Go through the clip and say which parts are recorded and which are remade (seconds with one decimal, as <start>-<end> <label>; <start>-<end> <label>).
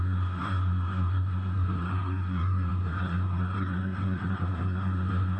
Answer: 0.0-5.4 remade